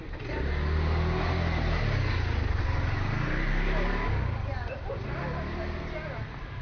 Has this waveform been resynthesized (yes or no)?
no